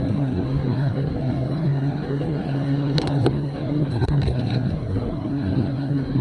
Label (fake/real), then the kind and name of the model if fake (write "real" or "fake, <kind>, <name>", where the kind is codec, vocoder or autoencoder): fake, codec, SNAC